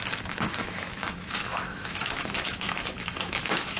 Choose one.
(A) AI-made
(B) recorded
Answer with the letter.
A